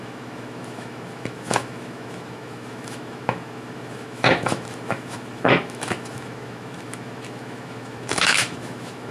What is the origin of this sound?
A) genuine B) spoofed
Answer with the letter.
B